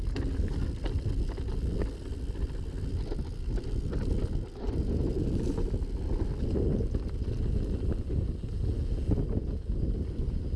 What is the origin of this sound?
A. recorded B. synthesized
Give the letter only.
A